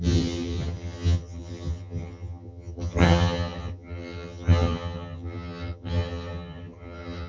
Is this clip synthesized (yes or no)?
yes